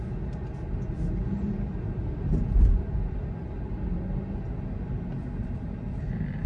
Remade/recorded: recorded